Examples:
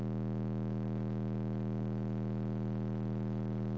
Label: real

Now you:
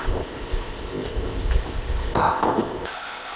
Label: fake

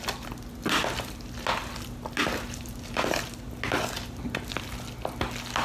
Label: real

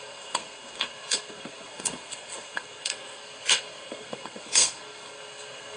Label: fake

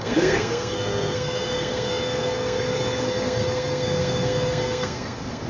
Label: fake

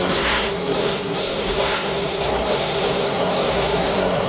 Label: fake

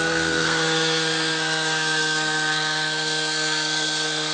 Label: fake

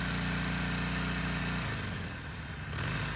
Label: real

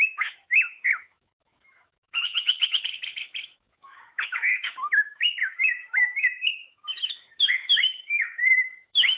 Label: fake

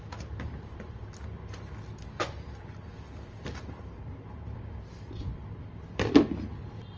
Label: real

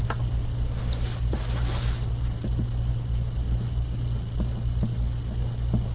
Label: real